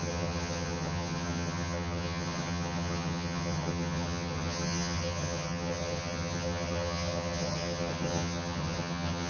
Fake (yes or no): yes